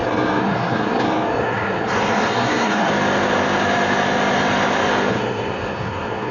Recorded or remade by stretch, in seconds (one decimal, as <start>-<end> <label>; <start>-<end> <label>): 0.0-2.9 remade; 2.9-5.1 recorded; 5.1-6.3 remade